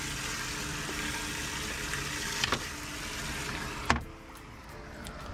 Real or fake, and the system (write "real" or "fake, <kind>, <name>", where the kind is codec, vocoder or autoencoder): real